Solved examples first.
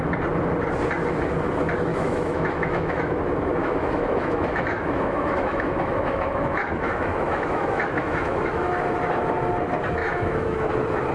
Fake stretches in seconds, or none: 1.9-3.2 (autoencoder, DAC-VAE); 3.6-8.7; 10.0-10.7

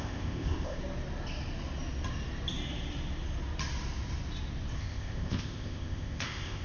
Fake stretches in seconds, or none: 0.0-0.8 (codec, ZipCodec); 4.8-6.6

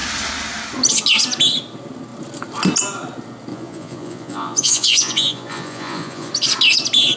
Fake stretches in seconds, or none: 3.5-6.3 (vocoder, Vocos)

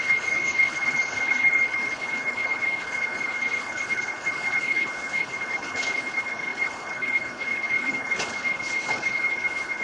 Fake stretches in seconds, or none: 0.0-9.8 (codec, HILCodec)

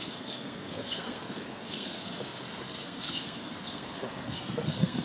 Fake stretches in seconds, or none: 0.0-5.0 (codec, SNAC)

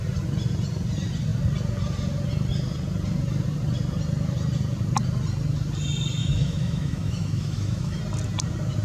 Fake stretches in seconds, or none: 6.2-8.0 (autoencoder, DAC-VAE)

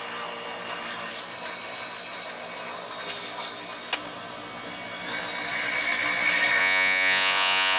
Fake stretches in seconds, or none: 6.6-7.8 (vocoder, Vocos)

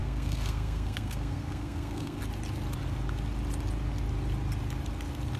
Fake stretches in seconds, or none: 0.0-2.2 (codec, SNAC)